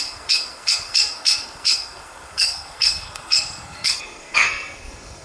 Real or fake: fake